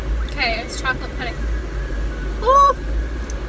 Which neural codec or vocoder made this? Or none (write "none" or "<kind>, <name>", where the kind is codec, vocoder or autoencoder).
none